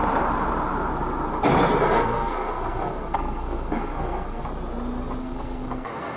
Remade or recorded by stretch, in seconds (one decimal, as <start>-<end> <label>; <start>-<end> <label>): 0.0-1.8 recorded; 1.8-4.5 remade; 4.5-5.2 recorded; 5.2-6.2 remade